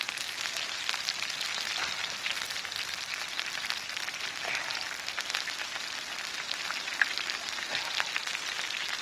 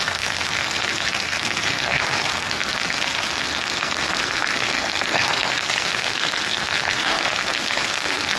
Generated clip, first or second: second